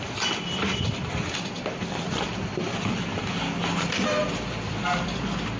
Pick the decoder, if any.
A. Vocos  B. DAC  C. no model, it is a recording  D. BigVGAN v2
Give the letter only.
C